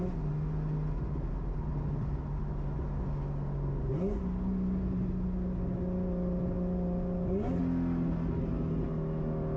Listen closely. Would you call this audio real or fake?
real